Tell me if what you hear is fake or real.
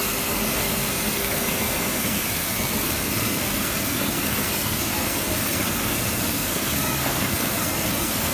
fake